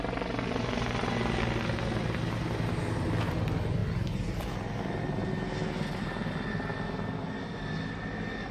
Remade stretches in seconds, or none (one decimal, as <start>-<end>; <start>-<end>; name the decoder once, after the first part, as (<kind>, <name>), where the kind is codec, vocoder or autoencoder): none